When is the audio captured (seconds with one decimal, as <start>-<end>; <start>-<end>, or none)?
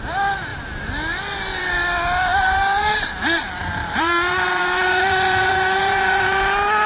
0.0-2.3; 6.4-6.9